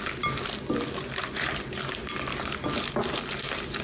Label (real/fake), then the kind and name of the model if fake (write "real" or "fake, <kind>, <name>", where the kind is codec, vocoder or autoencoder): real